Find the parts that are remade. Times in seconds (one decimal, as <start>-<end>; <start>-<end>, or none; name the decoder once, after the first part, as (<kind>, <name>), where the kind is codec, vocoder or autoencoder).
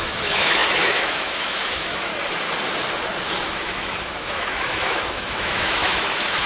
0.0-2.1 (autoencoder, DAC-VAE); 3.4-6.5